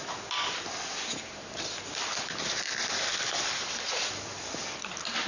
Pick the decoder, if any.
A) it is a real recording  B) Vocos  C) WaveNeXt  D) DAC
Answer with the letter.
A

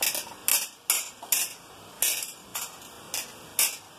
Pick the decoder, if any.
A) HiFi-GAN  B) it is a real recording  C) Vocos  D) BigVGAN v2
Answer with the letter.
B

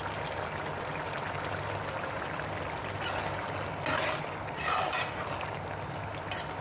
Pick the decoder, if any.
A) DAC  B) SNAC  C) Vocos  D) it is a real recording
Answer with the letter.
D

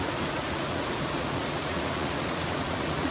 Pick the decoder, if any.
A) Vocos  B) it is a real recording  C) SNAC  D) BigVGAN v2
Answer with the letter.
A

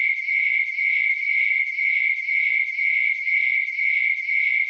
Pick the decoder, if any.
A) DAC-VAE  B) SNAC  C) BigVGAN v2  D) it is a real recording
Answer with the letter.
D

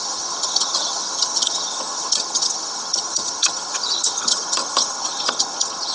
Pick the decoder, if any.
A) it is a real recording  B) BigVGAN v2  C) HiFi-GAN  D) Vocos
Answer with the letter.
C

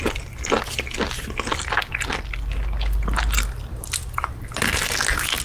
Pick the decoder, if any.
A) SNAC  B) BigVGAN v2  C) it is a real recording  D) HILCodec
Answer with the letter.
C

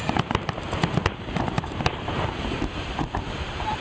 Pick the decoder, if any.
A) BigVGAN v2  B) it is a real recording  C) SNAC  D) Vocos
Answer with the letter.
A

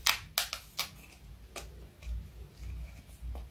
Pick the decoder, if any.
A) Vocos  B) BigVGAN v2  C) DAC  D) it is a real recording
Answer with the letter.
D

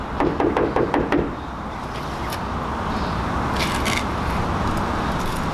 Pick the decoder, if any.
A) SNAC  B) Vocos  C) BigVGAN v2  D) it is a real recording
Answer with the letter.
D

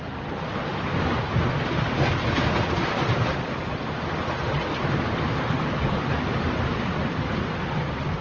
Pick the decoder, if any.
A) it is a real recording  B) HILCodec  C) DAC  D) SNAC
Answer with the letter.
A